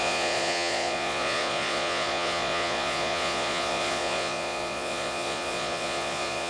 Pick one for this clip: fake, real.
fake